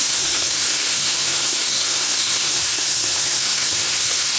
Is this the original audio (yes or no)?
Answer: no